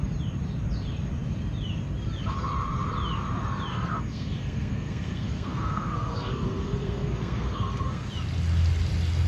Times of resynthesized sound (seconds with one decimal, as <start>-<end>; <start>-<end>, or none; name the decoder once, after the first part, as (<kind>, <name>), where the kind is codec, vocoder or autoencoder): 3.7-8.1 (codec, SNAC)